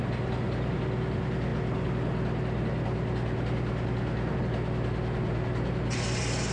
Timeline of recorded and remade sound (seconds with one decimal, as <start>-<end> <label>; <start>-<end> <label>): 0.0-6.5 recorded